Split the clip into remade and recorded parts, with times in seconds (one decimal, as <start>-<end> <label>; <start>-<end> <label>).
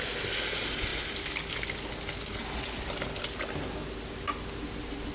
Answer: 0.0-5.1 recorded